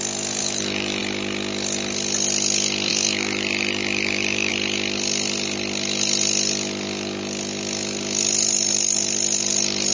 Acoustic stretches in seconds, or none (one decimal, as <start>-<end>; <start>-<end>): 0.0-0.4; 1.0-2.9; 4.5-9.9